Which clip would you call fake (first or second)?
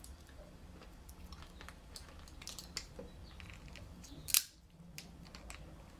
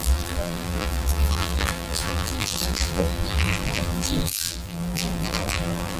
second